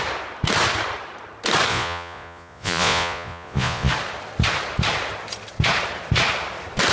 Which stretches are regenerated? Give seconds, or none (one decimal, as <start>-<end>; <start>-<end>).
1.7-3.9